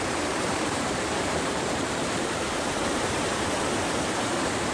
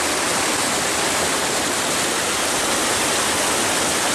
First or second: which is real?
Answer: second